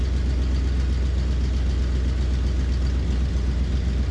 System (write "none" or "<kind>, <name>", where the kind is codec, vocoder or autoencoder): none